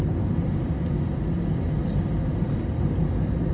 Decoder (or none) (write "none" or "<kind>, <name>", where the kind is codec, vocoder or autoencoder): none